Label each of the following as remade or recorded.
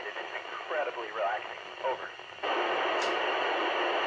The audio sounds recorded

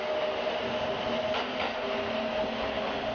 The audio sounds recorded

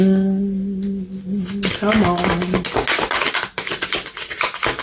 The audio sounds recorded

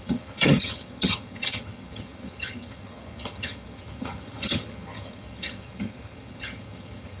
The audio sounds remade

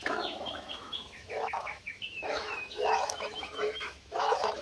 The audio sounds remade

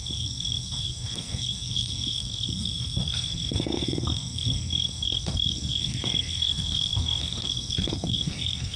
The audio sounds remade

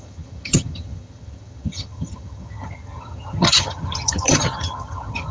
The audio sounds remade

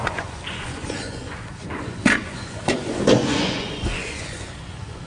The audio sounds remade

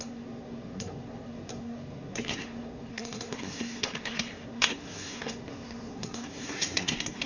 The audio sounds remade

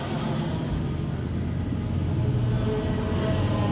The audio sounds recorded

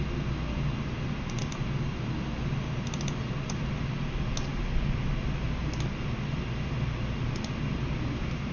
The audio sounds recorded